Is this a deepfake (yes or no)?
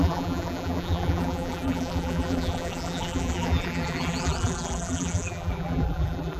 yes